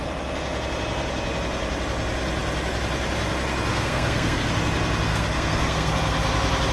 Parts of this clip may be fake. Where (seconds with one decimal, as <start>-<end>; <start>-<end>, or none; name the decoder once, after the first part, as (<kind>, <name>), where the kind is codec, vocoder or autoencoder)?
3.7-4.5 (codec, SNAC); 5.1-5.9